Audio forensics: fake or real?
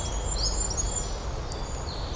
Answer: real